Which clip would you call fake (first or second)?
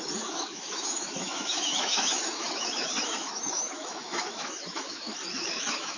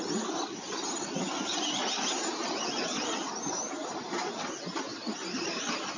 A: first